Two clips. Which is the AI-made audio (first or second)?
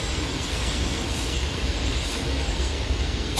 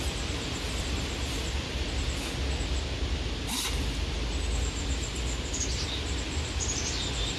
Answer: first